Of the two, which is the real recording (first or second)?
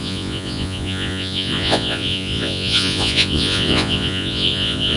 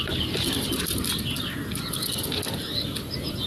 second